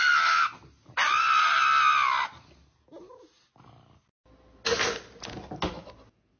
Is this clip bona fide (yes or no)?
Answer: yes